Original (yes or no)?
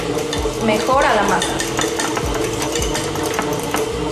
yes